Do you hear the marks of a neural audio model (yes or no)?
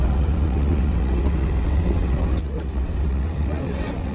yes